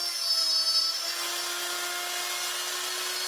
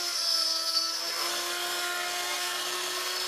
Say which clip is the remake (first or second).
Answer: second